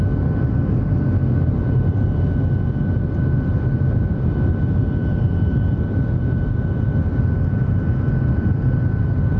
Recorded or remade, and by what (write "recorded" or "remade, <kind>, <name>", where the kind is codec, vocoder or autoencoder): recorded